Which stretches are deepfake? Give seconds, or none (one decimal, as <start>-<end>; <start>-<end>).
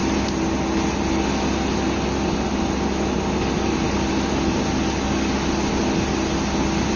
none